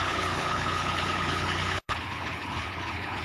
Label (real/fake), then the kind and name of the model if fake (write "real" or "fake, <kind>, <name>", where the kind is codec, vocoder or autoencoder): fake, codec, HILCodec